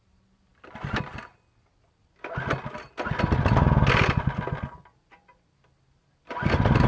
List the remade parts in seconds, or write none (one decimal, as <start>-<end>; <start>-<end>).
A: none